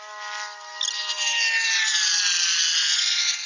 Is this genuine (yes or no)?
yes